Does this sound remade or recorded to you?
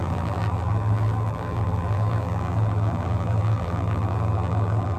remade